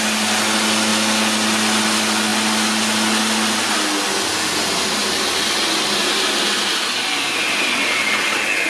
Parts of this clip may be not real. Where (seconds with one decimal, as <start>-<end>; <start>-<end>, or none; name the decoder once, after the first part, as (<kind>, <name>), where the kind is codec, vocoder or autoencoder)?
none